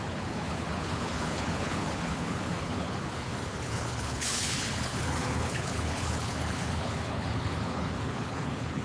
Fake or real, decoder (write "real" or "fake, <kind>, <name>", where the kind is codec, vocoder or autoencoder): fake, codec, HILCodec